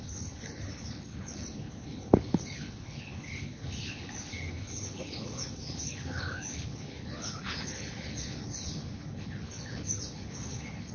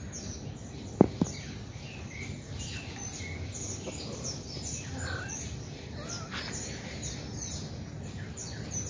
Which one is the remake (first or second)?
first